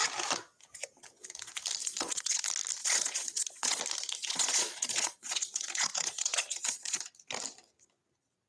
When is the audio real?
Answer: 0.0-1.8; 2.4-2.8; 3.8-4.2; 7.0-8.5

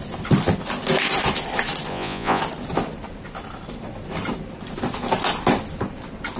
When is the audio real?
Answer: 0.0-1.9; 2.4-6.4

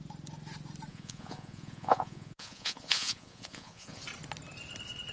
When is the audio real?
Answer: 0.0-0.9; 4.0-5.1

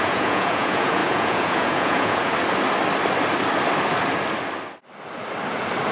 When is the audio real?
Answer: 2.3-5.9

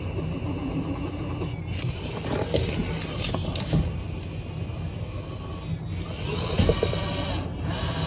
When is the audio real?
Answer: 0.0-8.1

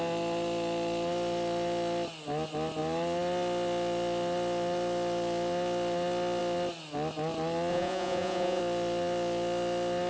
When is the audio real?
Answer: 0.0-7.7; 8.6-10.1

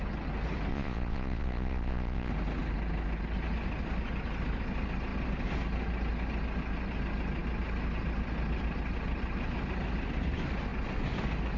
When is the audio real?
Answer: 0.0-0.7; 2.3-11.6

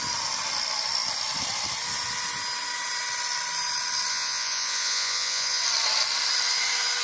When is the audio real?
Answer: 0.0-4.1; 5.6-7.0